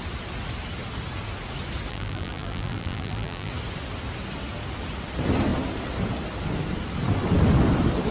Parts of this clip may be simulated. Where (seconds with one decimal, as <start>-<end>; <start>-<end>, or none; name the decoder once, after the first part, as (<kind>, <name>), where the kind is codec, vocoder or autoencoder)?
1.9-3.5 (vocoder, BigVGAN v2)